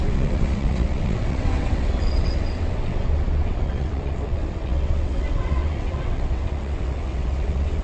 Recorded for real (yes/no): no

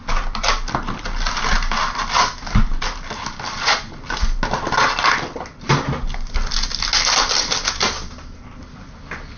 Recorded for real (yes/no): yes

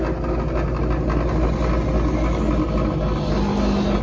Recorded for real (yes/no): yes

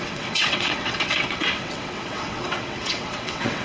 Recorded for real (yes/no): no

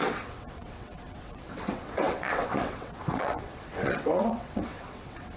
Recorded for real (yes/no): no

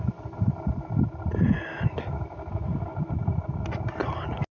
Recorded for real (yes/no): yes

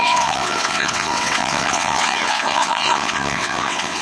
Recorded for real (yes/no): no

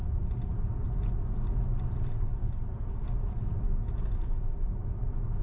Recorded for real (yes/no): yes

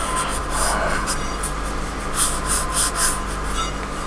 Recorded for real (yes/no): yes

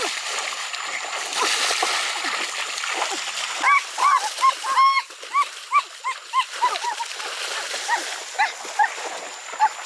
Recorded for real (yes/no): yes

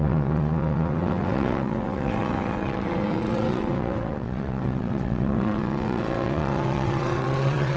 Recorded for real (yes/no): no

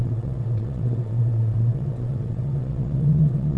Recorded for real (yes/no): no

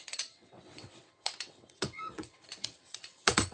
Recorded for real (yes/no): no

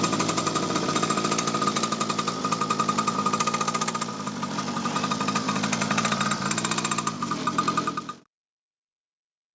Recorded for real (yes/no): yes